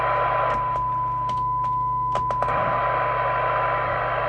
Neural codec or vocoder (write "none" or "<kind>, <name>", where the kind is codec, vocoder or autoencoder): none